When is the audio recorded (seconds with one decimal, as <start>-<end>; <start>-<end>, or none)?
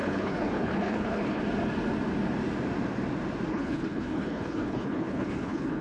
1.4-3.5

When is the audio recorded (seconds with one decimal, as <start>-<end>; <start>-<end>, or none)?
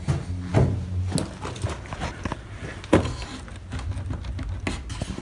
0.0-5.2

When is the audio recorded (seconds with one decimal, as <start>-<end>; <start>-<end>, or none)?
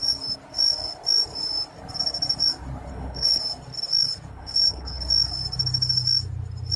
0.0-2.9; 3.4-4.3; 5.0-6.8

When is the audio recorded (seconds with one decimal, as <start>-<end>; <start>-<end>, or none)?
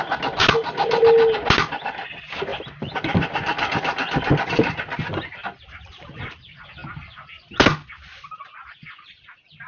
0.0-9.7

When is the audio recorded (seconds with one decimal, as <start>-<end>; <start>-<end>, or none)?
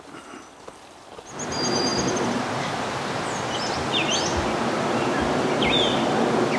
0.0-6.6